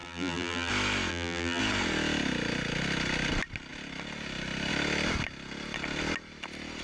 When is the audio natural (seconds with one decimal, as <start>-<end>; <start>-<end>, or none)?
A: 0.7-1.1; 1.6-6.8